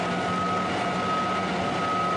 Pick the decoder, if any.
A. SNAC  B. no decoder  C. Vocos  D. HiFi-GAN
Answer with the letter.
B